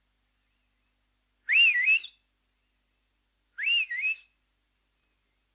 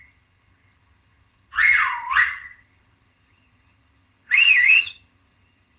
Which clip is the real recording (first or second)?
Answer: first